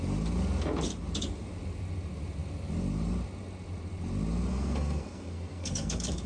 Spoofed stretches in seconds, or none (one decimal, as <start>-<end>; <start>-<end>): 4.5-6.3